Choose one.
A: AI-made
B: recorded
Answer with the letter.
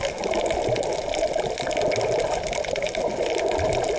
B